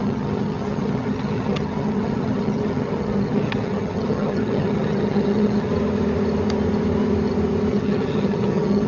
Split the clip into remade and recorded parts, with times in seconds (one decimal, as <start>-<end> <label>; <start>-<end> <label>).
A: 0.0-5.7 remade; 5.7-7.7 recorded; 7.7-8.9 remade